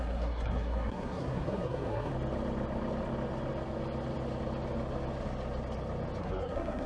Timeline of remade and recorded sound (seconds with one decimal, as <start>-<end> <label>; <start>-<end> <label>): 0.0-2.1 remade; 2.1-6.2 recorded; 6.2-6.9 remade